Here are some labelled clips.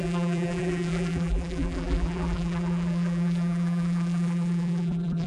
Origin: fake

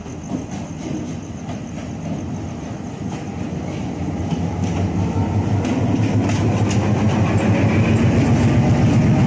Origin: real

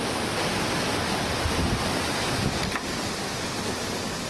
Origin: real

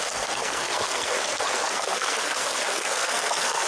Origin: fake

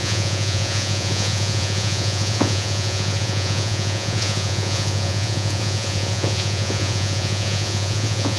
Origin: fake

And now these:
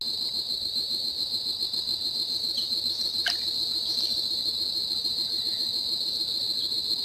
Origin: real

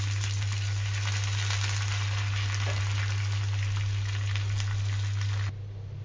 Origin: real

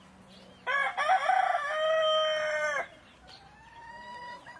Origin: real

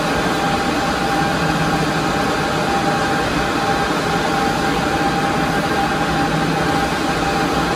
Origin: real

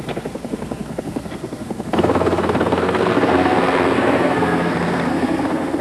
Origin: fake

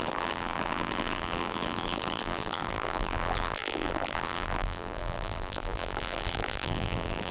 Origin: fake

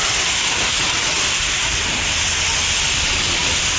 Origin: real